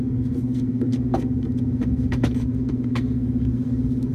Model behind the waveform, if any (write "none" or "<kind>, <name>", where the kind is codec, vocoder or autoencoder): codec, SNAC